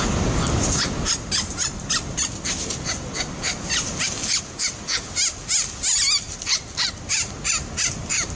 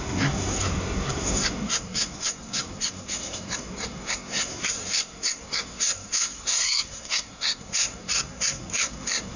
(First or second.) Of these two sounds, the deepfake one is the second